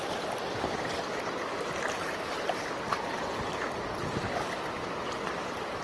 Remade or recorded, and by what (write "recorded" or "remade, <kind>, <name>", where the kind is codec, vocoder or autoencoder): recorded